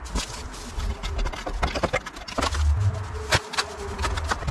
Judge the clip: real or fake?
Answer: real